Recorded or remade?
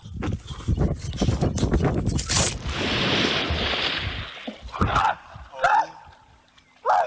recorded